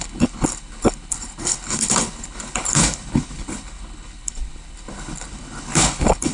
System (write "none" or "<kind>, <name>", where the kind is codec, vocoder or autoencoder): codec, HILCodec